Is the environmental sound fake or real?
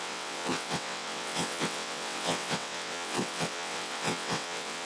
fake